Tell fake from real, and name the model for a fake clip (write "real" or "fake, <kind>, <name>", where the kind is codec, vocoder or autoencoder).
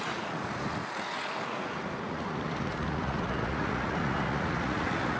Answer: fake, vocoder, Vocos